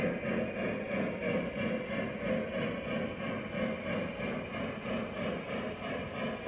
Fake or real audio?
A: real